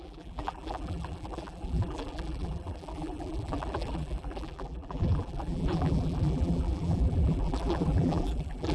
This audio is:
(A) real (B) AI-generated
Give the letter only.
B